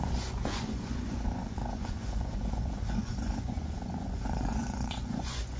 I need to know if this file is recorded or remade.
remade